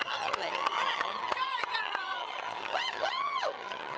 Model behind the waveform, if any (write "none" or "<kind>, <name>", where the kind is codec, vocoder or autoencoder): vocoder, HiFi-GAN